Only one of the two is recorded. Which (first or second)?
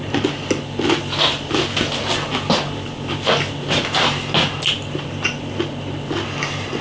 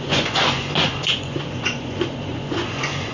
first